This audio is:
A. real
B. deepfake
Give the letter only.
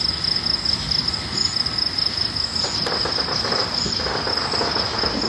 A